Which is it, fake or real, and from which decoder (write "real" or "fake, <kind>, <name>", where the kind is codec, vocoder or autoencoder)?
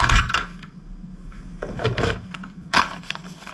fake, codec, SNAC